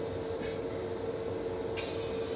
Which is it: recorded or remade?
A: recorded